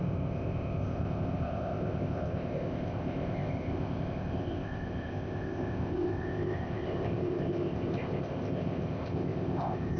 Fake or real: fake